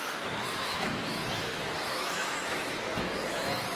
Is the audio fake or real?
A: fake